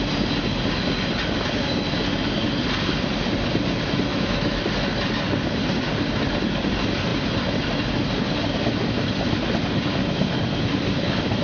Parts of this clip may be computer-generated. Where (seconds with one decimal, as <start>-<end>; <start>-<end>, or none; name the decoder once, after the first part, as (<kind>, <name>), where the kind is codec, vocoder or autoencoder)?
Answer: 4.1-4.6 (autoencoder, DAC-VAE)